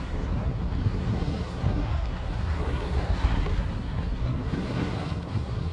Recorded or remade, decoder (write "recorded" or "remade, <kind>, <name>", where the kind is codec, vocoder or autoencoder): remade, codec, SNAC